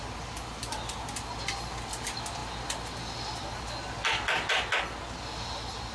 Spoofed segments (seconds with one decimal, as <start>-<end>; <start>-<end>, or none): none